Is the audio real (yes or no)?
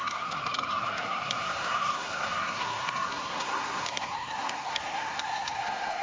no